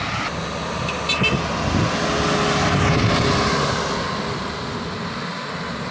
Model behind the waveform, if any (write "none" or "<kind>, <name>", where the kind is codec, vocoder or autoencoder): none